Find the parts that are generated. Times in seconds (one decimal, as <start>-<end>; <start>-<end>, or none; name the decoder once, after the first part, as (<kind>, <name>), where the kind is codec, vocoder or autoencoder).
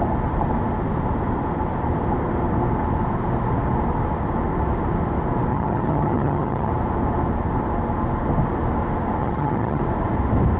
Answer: 5.5-6.7 (vocoder, HiFi-GAN); 9.2-9.8